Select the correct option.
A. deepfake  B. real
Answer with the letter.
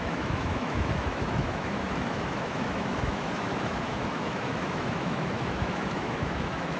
A